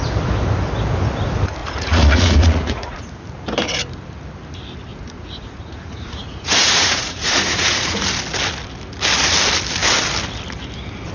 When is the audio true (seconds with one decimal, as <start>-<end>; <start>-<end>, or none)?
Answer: 0.0-1.6; 3.1-4.9; 8.0-11.1